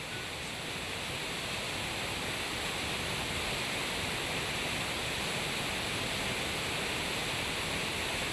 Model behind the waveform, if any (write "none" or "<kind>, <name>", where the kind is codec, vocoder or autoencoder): none